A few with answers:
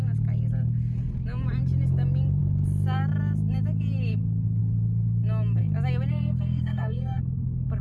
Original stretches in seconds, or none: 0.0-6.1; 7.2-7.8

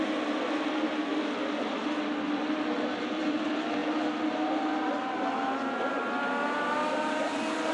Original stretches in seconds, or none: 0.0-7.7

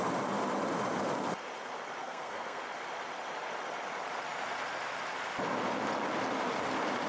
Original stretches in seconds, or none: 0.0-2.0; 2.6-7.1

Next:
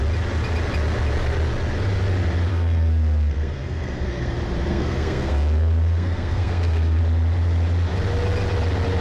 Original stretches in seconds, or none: 0.0-2.5; 4.3-4.7; 7.0-9.0

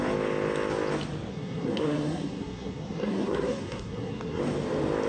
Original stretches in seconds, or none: 0.0-1.3; 4.4-5.1

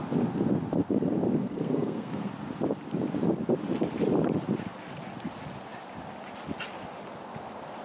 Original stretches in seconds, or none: 0.0-1.4; 2.3-7.8

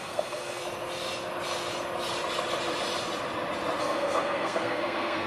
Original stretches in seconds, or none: 0.6-3.8